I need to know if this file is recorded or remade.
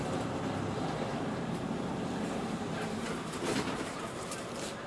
remade